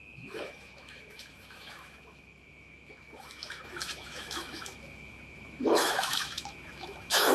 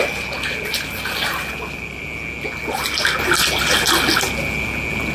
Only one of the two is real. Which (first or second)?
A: second